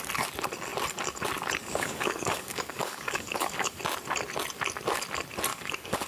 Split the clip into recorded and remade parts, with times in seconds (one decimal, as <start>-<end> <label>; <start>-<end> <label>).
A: 0.0-1.6 recorded; 1.6-3.8 remade; 3.8-5.5 recorded; 5.5-6.1 remade